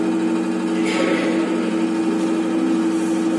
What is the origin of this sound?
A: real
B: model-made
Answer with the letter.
A